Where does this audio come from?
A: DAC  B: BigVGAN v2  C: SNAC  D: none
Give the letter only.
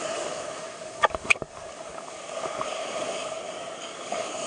A